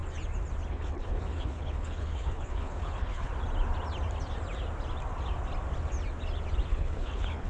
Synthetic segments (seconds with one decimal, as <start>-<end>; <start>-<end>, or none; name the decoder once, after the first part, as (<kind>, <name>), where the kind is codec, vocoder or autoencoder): 0.7-3.3 (codec, HILCodec); 6.7-7.5